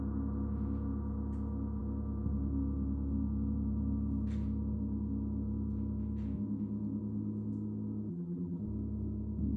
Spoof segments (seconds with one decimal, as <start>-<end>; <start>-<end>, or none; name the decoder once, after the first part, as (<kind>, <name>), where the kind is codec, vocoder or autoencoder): 8.1-8.6 (vocoder, BigVGAN v2)